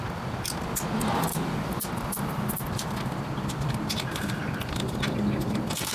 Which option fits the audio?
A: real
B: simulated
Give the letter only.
A